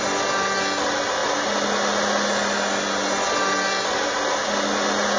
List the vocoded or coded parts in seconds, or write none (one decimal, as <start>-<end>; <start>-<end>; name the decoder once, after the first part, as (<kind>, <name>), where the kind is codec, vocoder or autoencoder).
none